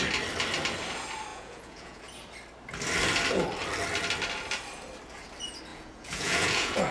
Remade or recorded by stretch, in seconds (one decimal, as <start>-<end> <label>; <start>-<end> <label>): 0.0-1.3 recorded; 1.3-2.1 remade; 2.1-5.7 recorded; 5.7-6.9 remade